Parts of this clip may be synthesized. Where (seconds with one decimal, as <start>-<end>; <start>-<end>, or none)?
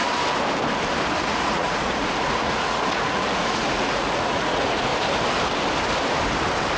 1.2-4.9